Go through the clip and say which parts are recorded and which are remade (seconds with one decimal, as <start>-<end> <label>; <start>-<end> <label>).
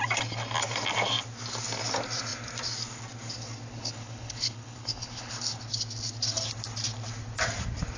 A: 0.0-3.7 recorded; 3.7-5.6 remade; 5.6-8.0 recorded